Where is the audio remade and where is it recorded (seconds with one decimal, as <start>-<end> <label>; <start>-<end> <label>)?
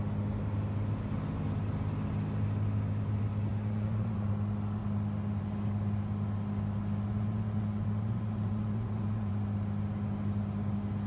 0.0-3.5 recorded; 3.5-4.3 remade; 4.3-7.1 recorded; 7.1-9.3 remade; 9.3-11.1 recorded